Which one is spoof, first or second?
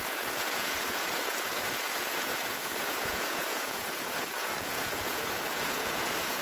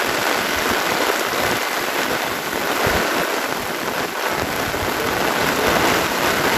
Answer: first